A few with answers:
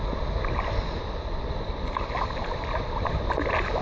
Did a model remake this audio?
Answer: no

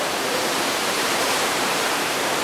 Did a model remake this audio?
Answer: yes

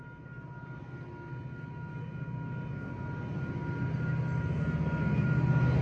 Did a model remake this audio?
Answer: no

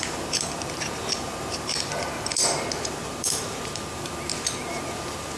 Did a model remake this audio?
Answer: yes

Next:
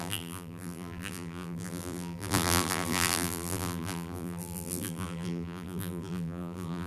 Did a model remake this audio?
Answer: yes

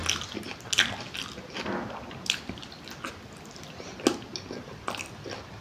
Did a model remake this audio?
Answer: no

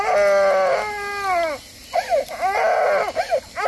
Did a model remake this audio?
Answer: no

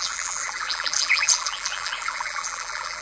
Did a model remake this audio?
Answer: yes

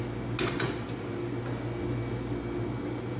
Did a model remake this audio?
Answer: no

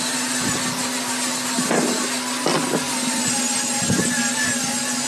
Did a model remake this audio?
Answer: no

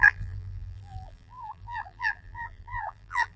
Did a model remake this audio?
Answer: yes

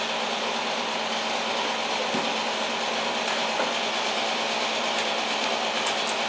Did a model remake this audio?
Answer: no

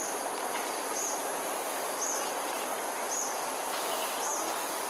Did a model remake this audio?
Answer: yes